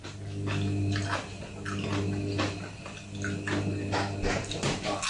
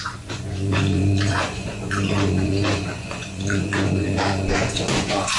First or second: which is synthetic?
second